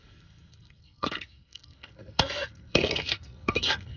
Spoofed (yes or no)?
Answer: yes